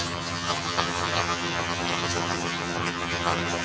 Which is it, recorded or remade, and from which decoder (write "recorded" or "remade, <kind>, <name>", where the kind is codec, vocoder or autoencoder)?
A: remade, vocoder, HiFi-GAN